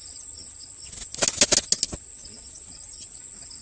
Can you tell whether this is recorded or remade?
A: recorded